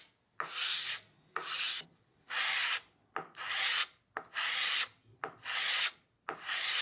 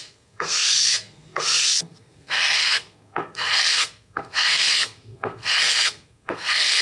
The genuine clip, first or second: first